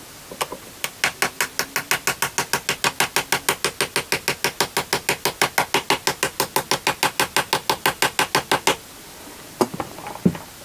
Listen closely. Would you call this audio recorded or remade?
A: recorded